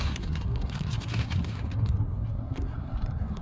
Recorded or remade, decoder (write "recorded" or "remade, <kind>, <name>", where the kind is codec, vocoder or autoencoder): remade, codec, SNAC